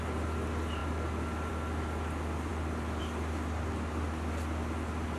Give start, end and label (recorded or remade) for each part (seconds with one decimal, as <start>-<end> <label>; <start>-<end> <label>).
0.0-5.2 recorded